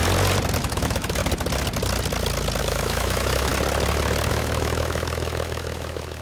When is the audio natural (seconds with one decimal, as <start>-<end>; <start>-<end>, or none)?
0.0-0.6; 1.2-2.6; 3.5-4.3